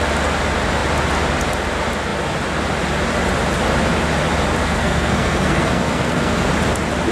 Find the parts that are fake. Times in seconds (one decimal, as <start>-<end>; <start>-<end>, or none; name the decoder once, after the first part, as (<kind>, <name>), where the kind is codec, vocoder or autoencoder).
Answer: 4.6-6.5 (codec, SNAC)